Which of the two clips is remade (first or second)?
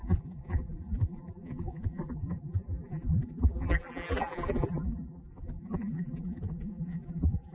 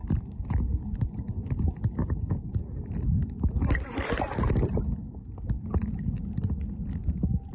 first